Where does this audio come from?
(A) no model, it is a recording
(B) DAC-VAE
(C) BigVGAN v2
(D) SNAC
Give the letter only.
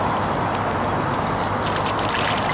A